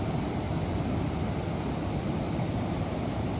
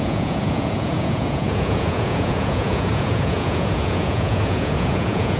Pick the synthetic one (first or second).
second